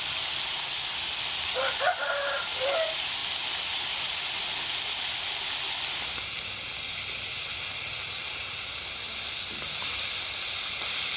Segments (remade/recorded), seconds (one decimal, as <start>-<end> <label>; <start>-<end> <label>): 0.0-11.2 recorded